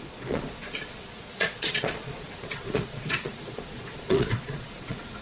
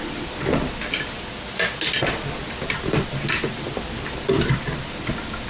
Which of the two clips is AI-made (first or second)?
first